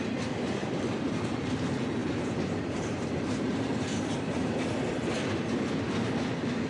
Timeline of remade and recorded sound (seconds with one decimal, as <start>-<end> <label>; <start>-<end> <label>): 0.0-0.6 recorded; 0.6-1.6 remade; 1.6-2.0 recorded; 2.0-4.9 remade; 4.9-6.7 recorded